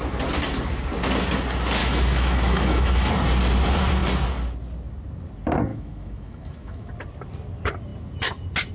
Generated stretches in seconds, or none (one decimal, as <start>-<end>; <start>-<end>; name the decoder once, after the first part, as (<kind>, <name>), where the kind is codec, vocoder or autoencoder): 1.8-3.1 (autoencoder, DAC-VAE); 5.7-6.9